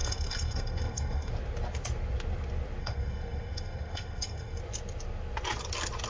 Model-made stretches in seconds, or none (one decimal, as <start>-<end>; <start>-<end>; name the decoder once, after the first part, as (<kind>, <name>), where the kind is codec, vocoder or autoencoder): 0.0-1.3 (codec, SNAC); 2.8-4.6